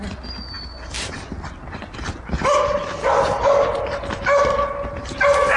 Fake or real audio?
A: real